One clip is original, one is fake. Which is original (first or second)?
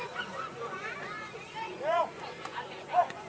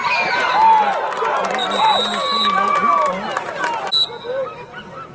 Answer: second